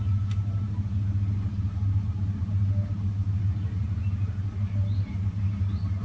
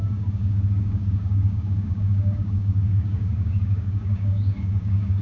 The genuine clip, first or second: first